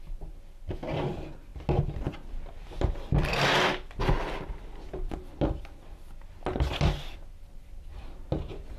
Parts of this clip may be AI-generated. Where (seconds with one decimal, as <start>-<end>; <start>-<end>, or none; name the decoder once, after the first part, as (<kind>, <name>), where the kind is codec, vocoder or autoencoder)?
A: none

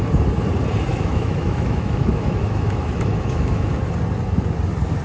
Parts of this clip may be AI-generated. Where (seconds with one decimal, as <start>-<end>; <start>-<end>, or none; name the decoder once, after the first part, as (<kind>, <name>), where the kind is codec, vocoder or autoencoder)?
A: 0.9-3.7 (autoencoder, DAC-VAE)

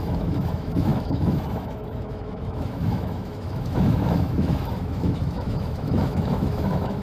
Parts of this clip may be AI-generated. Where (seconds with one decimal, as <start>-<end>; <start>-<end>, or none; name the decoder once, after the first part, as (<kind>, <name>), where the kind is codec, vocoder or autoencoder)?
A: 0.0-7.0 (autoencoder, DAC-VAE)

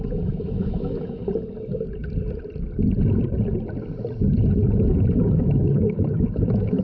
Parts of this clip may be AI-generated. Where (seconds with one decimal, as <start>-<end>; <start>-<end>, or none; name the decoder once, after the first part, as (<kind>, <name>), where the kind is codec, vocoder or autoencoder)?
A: 0.0-1.2 (autoencoder, DAC-VAE); 5.3-6.8

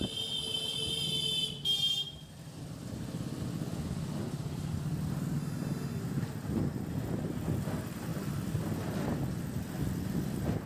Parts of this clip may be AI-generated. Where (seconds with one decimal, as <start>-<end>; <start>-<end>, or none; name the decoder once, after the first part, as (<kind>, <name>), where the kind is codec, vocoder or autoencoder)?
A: 5.4-6.0 (autoencoder, DAC-VAE)